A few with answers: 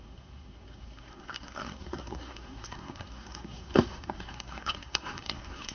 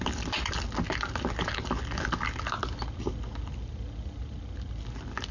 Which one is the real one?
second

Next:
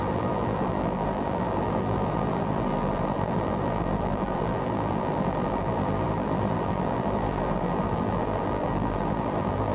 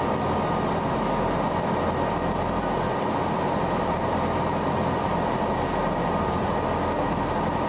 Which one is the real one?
second